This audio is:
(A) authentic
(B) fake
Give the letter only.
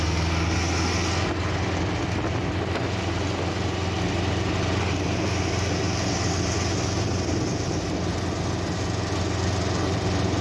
A